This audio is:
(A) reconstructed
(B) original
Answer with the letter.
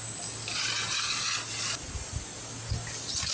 B